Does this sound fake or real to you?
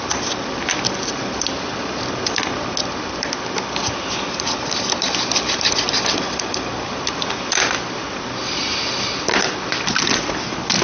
real